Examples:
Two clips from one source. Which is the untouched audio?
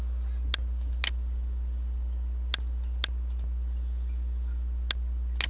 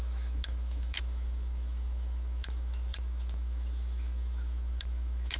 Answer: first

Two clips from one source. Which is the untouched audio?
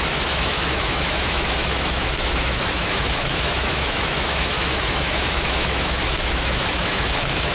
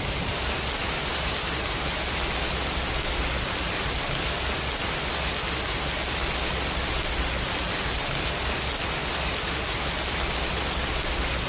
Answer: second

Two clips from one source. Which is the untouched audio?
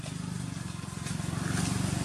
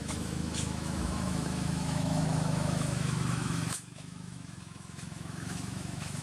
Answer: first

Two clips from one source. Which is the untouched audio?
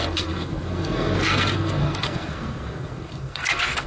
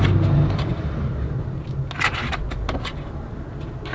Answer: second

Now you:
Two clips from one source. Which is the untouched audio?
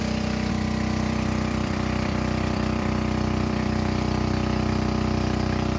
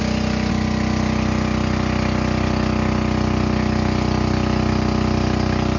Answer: second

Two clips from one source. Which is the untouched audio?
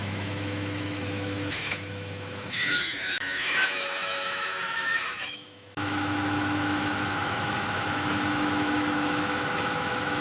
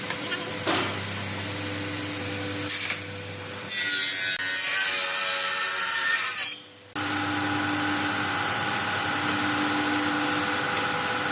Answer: second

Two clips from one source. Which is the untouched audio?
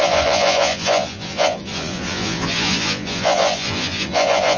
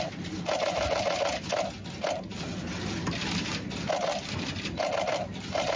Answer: second